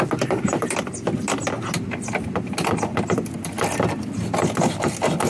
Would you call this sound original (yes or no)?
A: yes